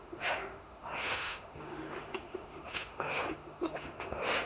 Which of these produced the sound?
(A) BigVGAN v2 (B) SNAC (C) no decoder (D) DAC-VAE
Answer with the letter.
D